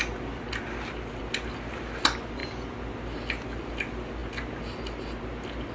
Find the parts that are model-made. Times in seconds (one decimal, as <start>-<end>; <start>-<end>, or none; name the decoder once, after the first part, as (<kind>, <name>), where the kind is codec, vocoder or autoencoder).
none